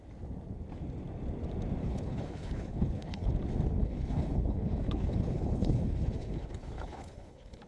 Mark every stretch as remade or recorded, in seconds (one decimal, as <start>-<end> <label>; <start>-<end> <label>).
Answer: 0.0-1.8 recorded; 1.8-3.3 remade; 3.3-3.8 recorded; 3.8-7.7 remade